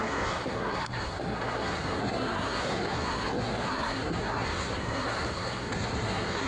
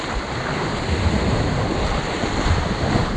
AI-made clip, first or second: first